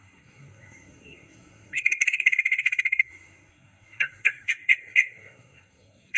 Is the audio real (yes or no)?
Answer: no